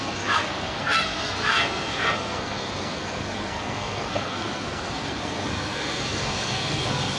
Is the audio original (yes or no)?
no